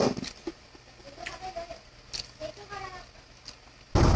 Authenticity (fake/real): real